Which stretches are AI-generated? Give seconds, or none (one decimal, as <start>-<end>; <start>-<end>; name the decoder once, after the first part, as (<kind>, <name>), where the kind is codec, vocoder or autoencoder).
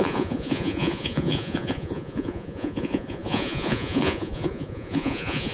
0.0-5.5 (vocoder, Vocos)